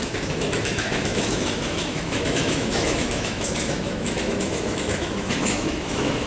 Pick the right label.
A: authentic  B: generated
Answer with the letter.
B